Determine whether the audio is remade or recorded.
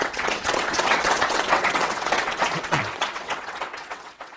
remade